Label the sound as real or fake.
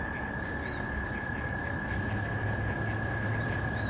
real